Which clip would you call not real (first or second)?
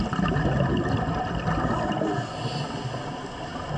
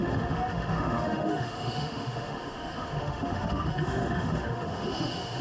second